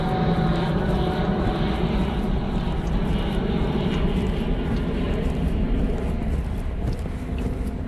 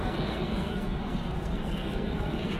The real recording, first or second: first